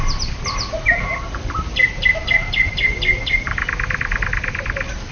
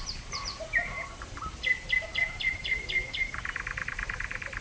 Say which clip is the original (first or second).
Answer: first